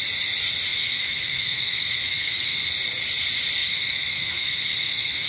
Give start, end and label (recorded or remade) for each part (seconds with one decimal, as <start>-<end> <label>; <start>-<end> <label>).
0.0-0.7 recorded; 0.7-2.7 remade; 2.7-3.6 recorded; 3.6-5.3 remade